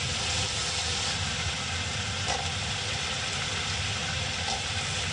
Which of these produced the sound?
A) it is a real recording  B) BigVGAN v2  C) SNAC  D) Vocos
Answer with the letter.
A